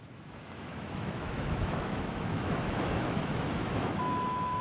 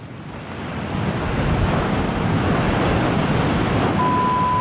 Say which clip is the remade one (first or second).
first